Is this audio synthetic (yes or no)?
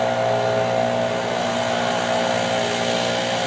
no